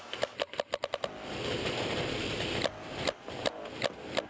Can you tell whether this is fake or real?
real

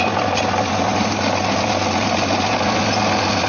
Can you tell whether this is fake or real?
real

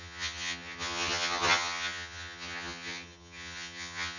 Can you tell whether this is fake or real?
fake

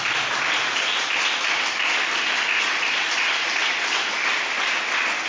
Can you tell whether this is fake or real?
real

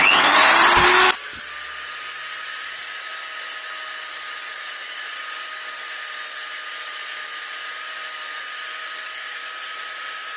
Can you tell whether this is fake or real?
real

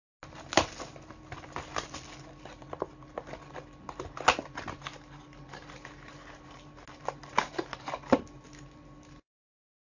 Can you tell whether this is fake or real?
real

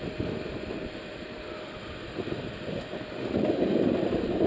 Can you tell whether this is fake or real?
real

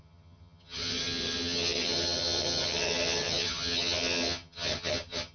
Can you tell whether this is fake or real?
fake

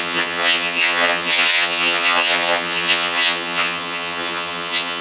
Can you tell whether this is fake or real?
fake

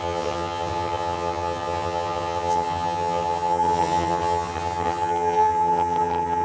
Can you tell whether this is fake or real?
fake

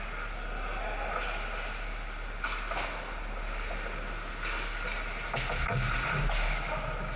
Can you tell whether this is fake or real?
real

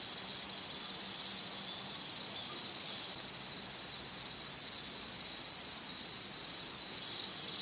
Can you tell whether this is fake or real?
real